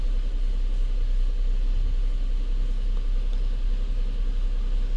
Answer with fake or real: real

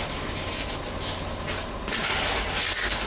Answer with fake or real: real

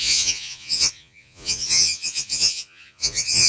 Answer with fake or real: fake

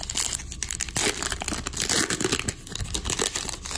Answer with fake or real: real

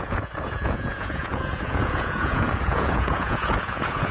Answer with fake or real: fake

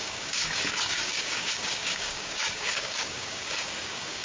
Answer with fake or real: fake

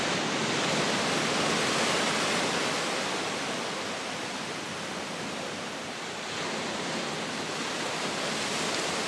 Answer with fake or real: real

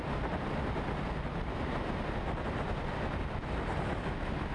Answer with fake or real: real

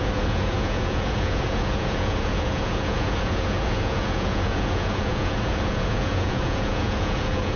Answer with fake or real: fake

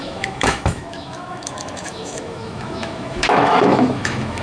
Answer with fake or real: fake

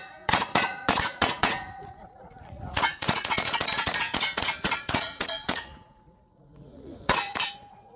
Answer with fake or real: fake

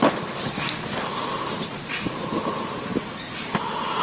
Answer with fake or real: real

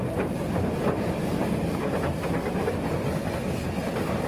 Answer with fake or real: real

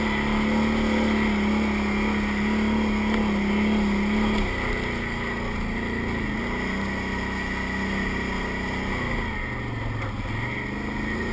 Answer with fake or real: real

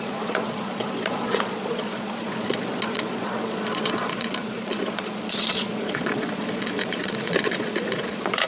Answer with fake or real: fake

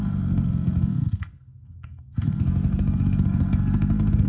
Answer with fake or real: fake